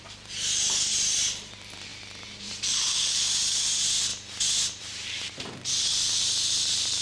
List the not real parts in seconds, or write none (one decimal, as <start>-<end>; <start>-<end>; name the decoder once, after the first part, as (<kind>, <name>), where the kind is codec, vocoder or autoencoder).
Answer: 0.0-4.1 (vocoder, BigVGAN v2); 4.8-7.0